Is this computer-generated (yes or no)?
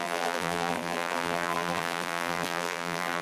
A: yes